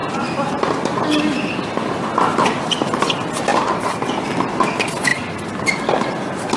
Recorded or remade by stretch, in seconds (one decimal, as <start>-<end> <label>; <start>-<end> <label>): 0.0-0.9 remade; 0.9-6.6 recorded